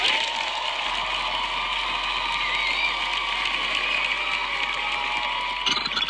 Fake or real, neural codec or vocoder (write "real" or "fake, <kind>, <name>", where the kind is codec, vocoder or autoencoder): real